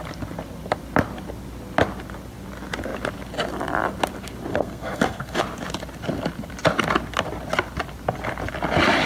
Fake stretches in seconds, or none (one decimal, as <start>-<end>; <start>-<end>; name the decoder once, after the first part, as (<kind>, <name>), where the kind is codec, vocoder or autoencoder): 4.5-5.4 (codec, SNAC)